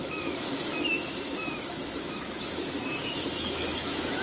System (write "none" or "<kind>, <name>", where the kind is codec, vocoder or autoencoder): autoencoder, DAC-VAE